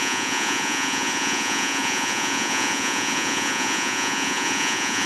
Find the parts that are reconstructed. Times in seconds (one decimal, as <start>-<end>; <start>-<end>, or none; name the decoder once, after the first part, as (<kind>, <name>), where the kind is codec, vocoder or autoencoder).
0.0-5.1 (vocoder, Vocos)

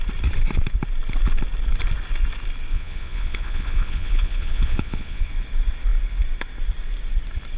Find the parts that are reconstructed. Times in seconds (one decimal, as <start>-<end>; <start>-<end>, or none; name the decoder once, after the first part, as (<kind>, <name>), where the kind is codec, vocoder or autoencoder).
2.7-5.3 (vocoder, Vocos)

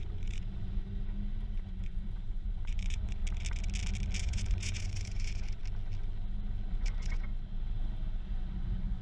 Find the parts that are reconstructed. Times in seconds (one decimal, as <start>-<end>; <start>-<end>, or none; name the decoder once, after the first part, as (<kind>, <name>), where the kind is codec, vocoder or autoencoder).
0.0-0.8 (vocoder, Vocos); 1.8-3.2; 4.2-5.6; 6.8-7.3; 8.6-9.0

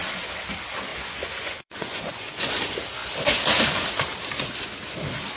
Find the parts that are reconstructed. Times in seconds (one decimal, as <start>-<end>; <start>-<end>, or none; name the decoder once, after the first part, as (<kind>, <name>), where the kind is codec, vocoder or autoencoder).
0.9-2.5 (vocoder, Vocos)

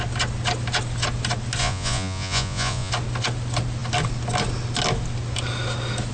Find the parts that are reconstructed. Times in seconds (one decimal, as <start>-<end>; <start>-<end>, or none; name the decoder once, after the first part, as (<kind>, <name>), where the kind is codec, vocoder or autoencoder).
1.6-2.9 (vocoder, Vocos)

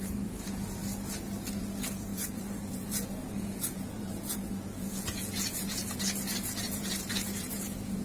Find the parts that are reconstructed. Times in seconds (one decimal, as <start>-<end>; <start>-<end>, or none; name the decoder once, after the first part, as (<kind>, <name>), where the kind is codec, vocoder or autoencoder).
0.0-0.8 (vocoder, Vocos); 1.6-8.0